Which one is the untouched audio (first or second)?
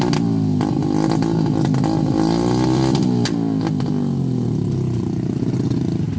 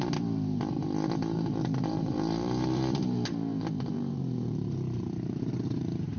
first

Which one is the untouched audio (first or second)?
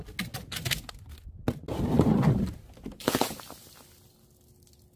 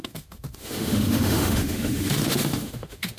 first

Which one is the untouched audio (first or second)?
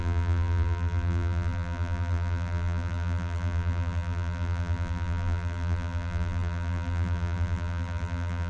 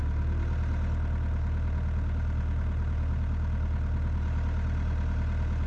second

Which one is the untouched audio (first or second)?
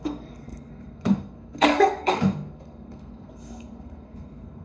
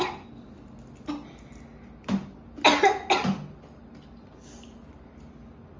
second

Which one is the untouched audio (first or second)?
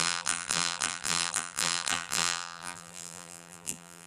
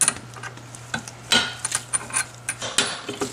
second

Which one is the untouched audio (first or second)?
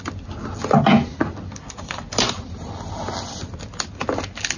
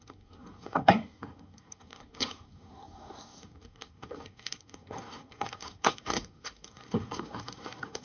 first